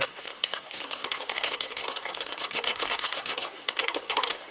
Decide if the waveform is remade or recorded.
remade